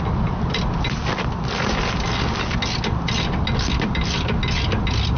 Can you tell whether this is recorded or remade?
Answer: recorded